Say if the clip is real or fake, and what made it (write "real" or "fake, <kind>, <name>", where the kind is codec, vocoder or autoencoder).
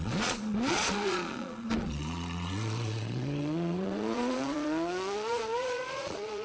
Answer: fake, vocoder, Vocos